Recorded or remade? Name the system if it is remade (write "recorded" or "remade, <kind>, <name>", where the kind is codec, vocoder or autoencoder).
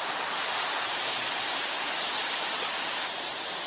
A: remade, vocoder, BigVGAN v2